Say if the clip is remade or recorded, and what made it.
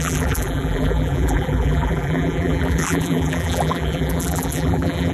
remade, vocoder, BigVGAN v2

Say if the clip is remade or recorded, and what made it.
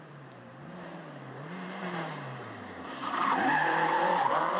remade, vocoder, BigVGAN v2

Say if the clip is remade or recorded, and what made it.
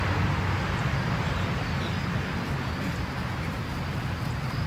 recorded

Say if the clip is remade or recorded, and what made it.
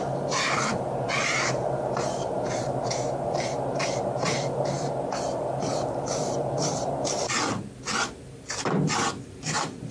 remade, vocoder, BigVGAN v2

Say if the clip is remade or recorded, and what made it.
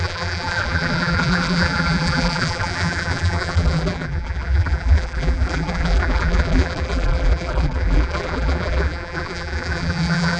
remade, vocoder, BigVGAN v2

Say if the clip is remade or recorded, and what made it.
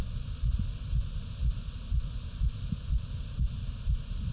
recorded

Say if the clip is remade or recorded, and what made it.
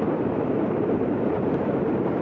remade, vocoder, BigVGAN v2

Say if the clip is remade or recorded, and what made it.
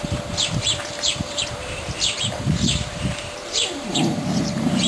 remade, vocoder, BigVGAN v2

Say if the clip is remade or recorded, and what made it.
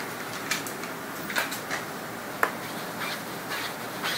recorded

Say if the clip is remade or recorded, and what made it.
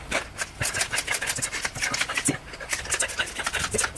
recorded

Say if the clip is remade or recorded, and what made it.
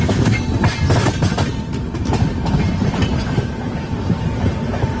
recorded